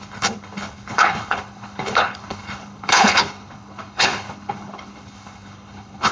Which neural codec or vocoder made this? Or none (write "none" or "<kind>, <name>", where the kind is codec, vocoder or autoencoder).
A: codec, HILCodec